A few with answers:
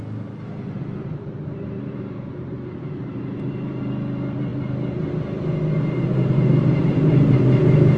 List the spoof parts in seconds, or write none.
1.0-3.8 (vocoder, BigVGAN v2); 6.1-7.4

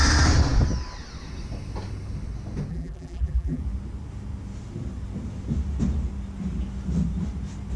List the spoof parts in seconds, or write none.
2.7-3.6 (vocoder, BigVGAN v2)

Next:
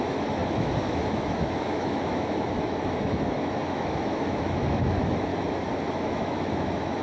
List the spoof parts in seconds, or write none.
0.0-5.3 (autoencoder, DAC-VAE); 5.9-7.0

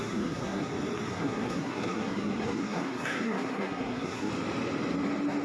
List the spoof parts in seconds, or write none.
0.0-0.7 (codec, SNAC); 1.1-4.3

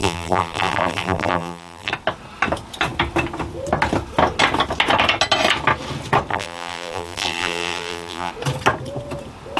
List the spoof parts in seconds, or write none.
0.0-1.9 (vocoder, BigVGAN v2); 6.3-8.3